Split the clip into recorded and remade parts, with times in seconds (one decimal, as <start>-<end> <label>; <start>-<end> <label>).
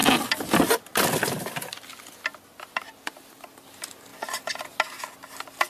0.0-4.1 recorded; 4.1-4.6 remade; 4.6-5.7 recorded